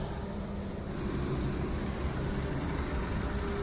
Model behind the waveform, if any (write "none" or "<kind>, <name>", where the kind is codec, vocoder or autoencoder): none